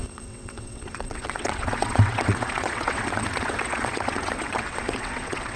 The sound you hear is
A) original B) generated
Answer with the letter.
B